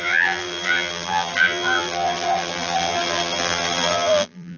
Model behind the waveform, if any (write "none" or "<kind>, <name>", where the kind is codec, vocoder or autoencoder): vocoder, BigVGAN v2